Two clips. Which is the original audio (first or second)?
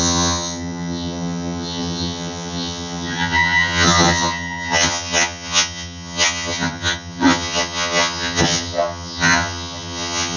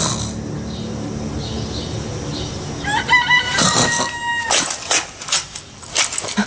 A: second